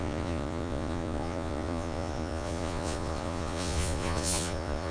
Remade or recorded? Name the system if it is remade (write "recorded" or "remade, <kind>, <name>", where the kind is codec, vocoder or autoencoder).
remade, vocoder, Vocos